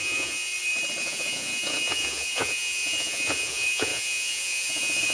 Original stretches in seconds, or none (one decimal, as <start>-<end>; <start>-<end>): 0.5-1.0